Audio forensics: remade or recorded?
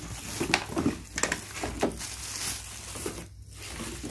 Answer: recorded